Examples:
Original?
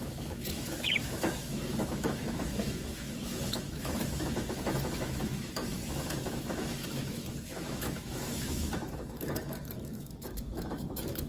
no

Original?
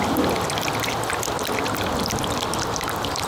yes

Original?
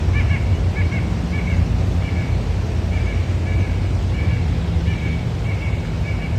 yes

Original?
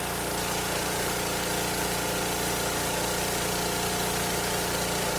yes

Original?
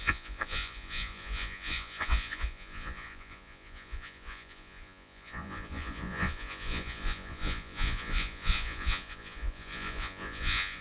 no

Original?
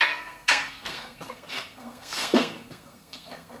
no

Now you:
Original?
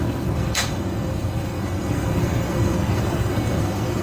no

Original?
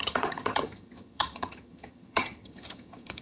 no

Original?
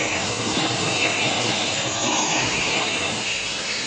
no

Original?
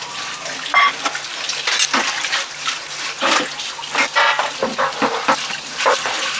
yes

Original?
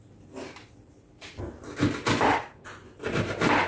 yes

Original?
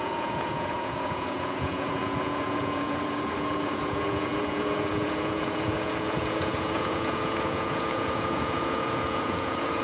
no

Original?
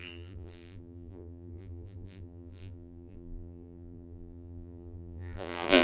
no